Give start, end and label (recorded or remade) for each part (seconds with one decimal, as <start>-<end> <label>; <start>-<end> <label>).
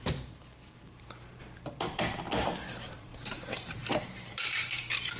0.0-1.4 remade; 1.4-2.4 recorded; 2.4-5.2 remade